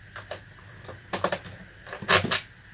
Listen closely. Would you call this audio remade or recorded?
recorded